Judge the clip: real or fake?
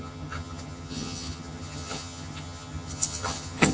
fake